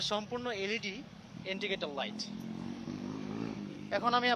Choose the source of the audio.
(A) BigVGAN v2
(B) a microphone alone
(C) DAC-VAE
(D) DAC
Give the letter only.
D